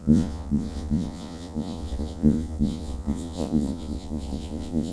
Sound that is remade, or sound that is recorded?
remade